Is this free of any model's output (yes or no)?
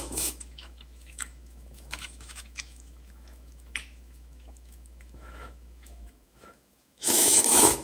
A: no